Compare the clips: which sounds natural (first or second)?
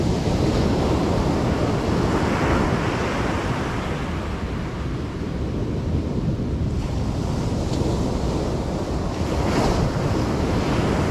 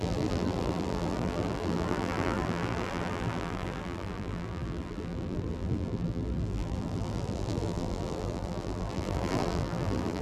first